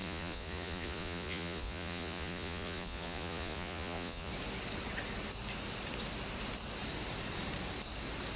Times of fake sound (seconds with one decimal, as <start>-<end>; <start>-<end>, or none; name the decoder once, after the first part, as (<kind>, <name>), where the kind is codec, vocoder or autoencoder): 0.0-4.3 (vocoder, Vocos)